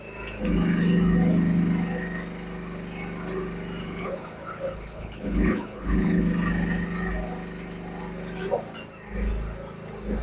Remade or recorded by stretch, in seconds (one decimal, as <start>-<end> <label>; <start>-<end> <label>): 0.0-3.8 recorded; 3.8-6.2 remade; 6.2-10.2 recorded